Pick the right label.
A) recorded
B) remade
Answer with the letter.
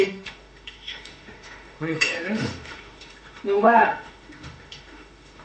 B